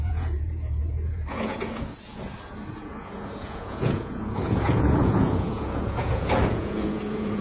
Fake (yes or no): yes